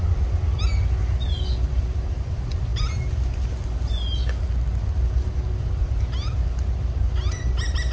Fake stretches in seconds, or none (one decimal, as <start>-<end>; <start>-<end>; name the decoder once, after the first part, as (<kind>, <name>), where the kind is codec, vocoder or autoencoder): none